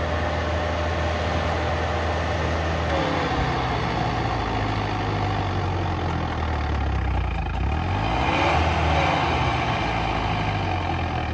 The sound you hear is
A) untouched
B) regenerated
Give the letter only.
A